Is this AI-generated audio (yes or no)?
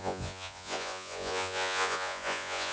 yes